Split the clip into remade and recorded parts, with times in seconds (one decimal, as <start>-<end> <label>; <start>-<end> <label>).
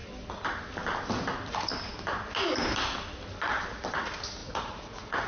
0.0-4.4 recorded; 4.4-5.3 remade